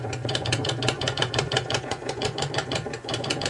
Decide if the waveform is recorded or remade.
remade